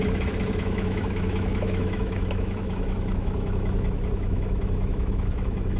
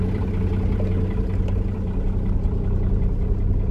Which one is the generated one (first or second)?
first